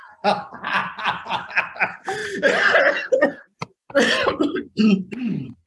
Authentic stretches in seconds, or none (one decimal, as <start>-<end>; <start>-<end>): none